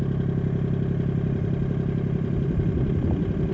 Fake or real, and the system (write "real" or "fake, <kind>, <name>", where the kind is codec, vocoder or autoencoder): real